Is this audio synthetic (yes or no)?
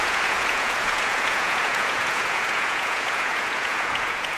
yes